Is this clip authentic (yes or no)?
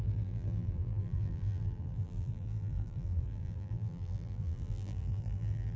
no